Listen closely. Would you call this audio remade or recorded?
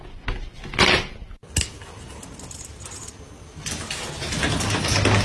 recorded